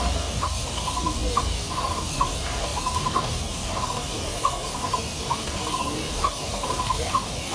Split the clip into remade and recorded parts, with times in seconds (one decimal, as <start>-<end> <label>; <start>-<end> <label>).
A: 0.0-7.5 remade